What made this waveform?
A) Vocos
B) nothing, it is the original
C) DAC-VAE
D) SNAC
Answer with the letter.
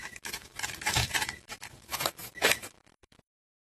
C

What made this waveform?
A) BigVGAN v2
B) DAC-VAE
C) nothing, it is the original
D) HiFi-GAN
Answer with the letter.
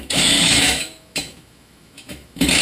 B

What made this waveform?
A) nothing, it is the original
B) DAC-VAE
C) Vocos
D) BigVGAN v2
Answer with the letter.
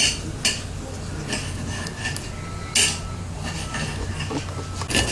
A